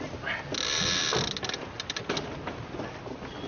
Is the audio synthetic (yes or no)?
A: no